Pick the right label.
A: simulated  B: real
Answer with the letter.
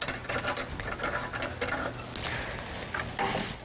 B